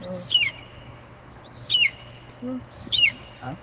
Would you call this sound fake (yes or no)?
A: yes